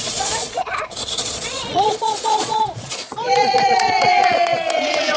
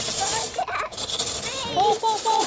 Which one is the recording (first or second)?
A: second